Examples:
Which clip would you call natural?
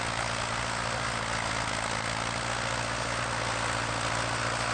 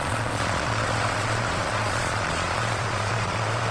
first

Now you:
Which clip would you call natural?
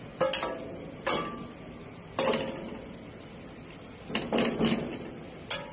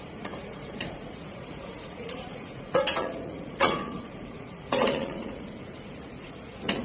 first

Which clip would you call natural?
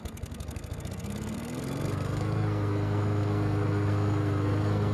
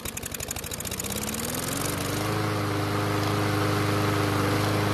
second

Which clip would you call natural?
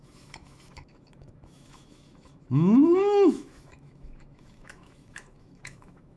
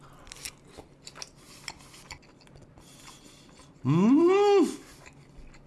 second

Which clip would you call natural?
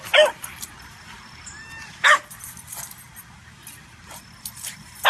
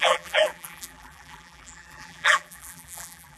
first